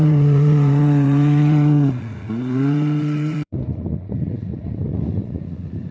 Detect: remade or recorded remade